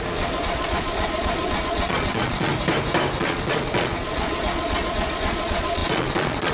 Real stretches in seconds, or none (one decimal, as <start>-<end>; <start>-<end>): 2.5-3.2